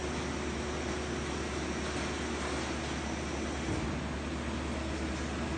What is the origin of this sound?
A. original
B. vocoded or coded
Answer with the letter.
A